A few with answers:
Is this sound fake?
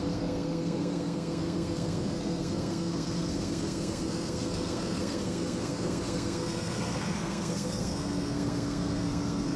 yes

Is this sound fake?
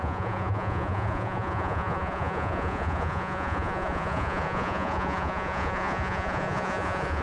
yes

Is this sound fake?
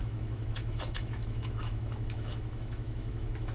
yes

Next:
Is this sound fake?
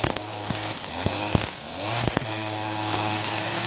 yes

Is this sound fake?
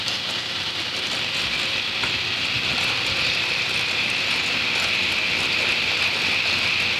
no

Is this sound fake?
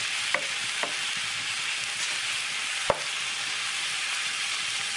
no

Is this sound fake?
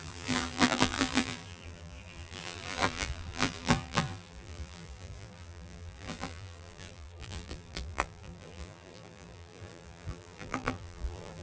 yes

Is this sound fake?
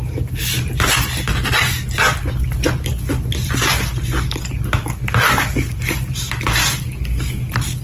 no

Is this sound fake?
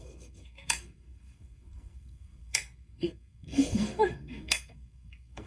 yes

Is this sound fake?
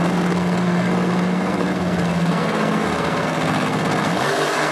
yes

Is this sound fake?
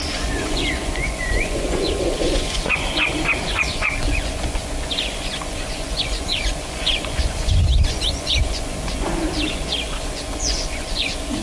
yes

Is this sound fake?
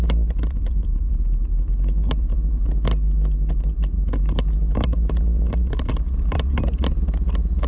no